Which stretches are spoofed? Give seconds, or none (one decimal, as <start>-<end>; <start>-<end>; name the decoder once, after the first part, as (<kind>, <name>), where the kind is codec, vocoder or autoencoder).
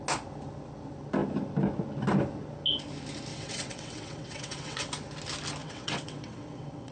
3.3-4.9 (vocoder, WaveNeXt); 5.6-6.9